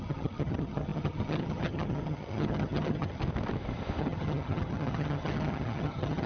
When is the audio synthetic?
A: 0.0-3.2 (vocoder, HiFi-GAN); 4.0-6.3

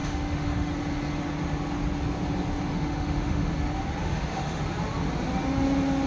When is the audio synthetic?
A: 0.0-0.7 (autoencoder, DAC-VAE); 2.7-3.5; 4.0-4.6

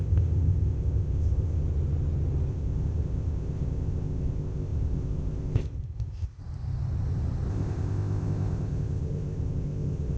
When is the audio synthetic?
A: 0.0-1.6 (codec, ZipCodec); 2.5-6.4; 7.5-10.2

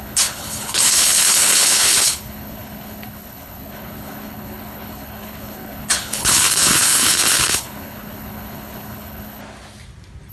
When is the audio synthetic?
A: 0.0-9.4 (codec, HILCodec)

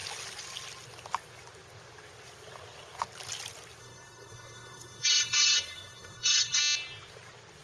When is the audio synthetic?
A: 3.8-6.6 (codec, SNAC)

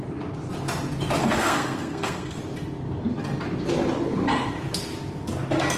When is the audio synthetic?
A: 1.2-2.4 (codec, SNAC)

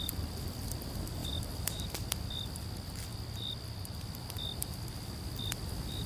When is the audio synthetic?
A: none